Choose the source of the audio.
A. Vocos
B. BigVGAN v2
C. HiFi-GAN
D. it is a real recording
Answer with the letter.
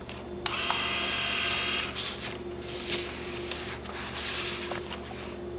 D